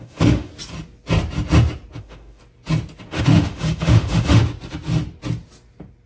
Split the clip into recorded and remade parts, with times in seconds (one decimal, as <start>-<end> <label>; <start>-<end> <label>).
0.0-0.5 remade; 0.5-2.0 recorded; 2.0-2.4 remade; 2.4-3.1 recorded; 3.1-4.4 remade; 4.4-6.1 recorded